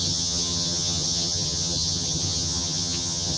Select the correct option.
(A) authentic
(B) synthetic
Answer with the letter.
B